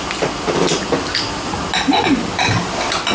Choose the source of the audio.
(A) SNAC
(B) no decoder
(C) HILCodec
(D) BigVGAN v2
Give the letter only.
B